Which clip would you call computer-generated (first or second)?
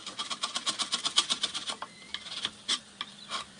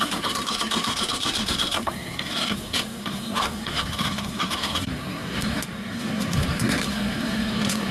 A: second